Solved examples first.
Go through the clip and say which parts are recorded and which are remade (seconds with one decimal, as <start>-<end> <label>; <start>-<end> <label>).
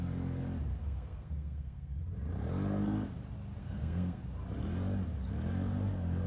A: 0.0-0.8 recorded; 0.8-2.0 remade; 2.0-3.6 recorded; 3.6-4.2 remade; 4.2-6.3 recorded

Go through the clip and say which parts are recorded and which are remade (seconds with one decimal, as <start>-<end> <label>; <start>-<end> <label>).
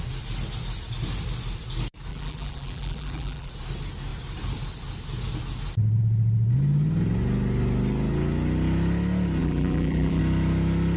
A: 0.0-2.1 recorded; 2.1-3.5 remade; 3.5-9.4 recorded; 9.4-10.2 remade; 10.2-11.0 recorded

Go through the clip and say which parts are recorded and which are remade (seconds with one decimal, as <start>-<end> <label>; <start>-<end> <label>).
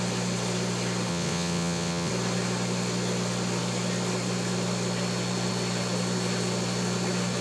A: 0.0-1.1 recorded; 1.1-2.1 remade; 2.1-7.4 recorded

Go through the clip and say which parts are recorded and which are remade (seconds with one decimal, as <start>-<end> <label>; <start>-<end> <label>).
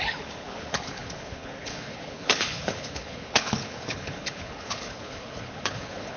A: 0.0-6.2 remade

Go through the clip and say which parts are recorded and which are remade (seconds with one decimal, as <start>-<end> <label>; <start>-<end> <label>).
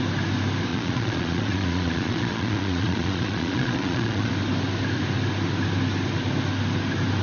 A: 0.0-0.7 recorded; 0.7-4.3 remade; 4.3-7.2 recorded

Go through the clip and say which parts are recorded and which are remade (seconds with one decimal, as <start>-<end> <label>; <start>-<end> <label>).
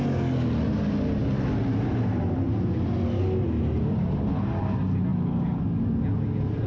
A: 0.0-6.7 recorded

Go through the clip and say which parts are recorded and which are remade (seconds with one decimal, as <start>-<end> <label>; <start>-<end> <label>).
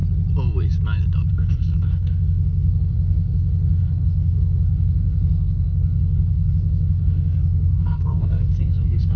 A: 0.0-1.3 recorded; 1.3-9.2 remade